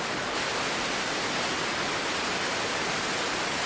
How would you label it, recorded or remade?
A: recorded